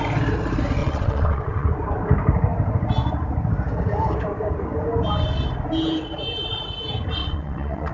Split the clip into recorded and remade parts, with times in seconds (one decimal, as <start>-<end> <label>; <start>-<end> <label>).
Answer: 0.0-0.8 recorded; 0.8-1.7 remade; 1.7-7.2 recorded; 7.2-7.9 remade